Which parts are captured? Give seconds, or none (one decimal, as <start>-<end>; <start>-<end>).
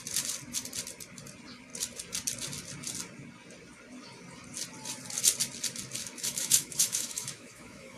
0.0-6.0